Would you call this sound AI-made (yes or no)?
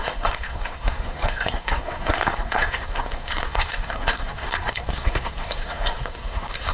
yes